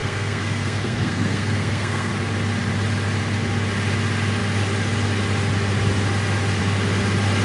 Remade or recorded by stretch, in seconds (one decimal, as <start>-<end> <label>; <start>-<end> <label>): 0.0-2.1 remade; 2.1-7.4 recorded